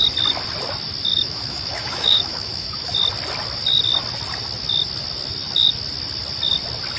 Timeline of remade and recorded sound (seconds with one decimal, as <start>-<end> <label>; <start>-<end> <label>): 0.0-1.1 recorded; 1.1-2.9 remade; 2.9-7.0 recorded